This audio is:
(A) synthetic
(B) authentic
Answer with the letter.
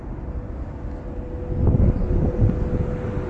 B